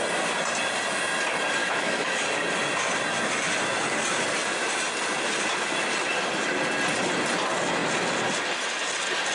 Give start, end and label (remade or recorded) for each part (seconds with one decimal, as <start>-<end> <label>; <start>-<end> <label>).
0.0-1.6 recorded; 1.6-2.2 remade; 2.2-9.3 recorded